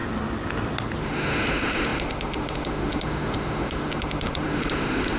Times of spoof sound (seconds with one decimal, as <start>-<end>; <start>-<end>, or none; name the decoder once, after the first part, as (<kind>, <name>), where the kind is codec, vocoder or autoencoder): 1.0-5.2 (autoencoder, DAC-VAE)